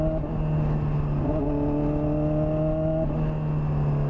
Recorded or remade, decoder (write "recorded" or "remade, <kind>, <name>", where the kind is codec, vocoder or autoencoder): recorded